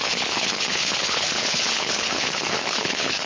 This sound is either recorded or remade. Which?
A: remade